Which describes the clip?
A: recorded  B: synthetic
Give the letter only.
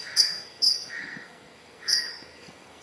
B